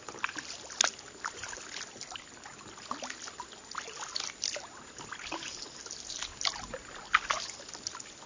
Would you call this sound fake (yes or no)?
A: no